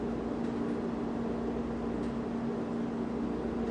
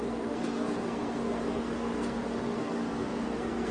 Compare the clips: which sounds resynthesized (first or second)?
second